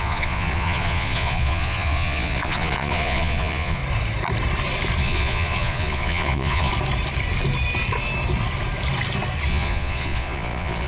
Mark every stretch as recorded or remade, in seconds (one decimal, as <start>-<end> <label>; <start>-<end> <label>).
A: 0.0-3.8 remade; 3.8-5.0 recorded; 5.0-6.7 remade; 6.7-9.5 recorded; 9.5-10.9 remade